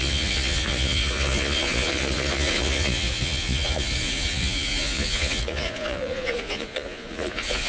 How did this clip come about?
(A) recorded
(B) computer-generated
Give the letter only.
B